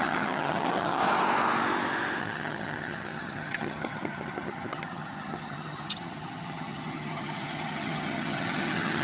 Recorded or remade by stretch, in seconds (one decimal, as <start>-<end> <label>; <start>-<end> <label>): 0.0-1.0 remade; 1.0-2.2 recorded; 2.2-9.0 remade